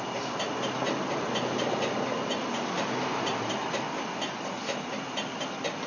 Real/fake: real